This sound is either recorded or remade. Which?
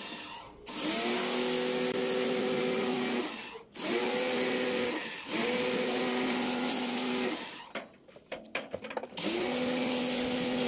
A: recorded